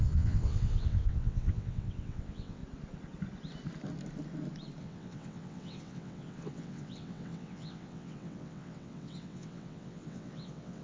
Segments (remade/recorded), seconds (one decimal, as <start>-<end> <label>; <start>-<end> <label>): 0.0-2.6 remade; 2.6-4.8 recorded; 4.8-10.8 remade